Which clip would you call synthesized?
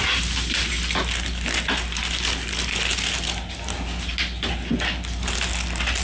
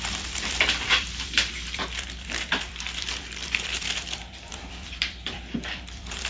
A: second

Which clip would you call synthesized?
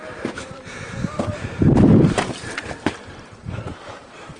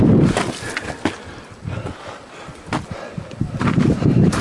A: first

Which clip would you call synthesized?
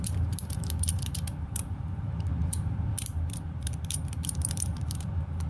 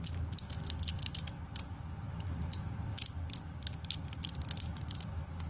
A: first